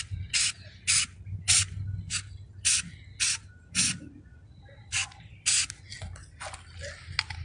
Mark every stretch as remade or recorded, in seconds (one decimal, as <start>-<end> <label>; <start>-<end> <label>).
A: 0.0-7.4 recorded